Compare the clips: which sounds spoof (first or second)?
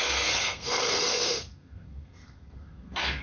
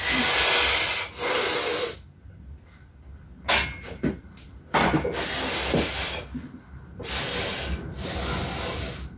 first